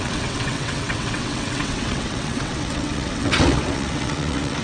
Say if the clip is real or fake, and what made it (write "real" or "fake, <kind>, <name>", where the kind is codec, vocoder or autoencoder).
fake, vocoder, WaveNeXt